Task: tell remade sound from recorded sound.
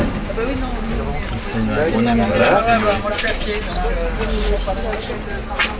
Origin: recorded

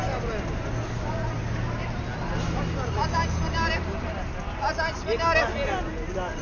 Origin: recorded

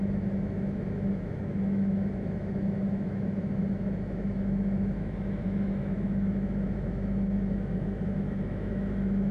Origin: remade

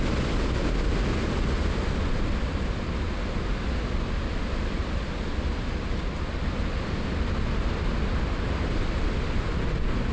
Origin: recorded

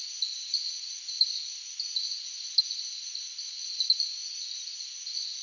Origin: remade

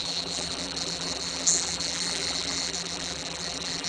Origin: remade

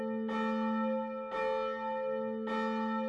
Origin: recorded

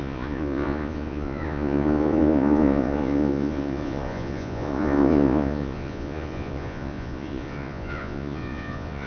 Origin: remade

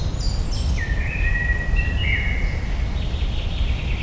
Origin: recorded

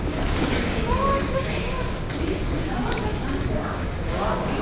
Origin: remade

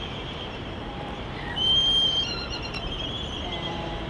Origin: remade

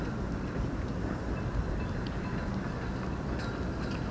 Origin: recorded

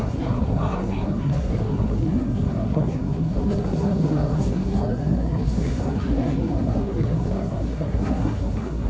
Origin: remade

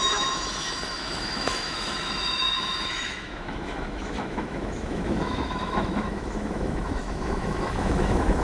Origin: remade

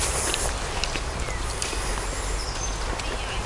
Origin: recorded